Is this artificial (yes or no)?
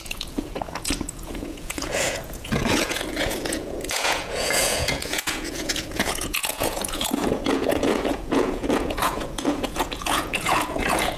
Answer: yes